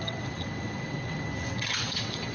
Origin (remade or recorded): remade